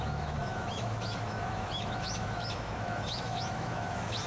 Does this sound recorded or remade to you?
remade